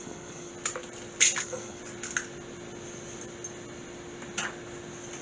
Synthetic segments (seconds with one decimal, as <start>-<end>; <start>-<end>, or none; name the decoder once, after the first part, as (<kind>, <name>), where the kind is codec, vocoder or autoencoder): 0.0-0.5 (codec, SNAC); 1.4-1.8